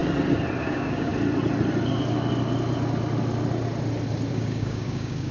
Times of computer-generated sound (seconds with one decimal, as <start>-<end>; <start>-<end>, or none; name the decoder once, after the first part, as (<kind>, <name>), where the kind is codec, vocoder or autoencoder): 0.6-1.1 (codec, DAC); 4.3-5.3